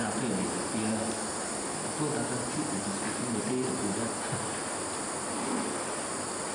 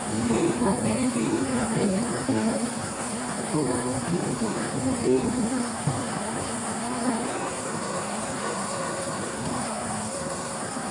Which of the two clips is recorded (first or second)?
first